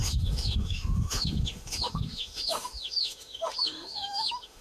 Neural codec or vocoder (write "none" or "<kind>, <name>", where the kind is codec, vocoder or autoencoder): autoencoder, DAC-VAE